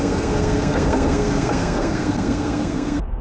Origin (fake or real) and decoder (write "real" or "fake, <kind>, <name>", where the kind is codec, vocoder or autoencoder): fake, codec, SNAC